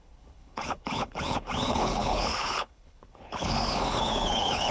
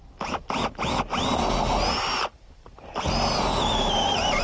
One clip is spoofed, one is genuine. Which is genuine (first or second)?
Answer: second